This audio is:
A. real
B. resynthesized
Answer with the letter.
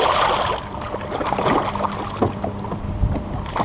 A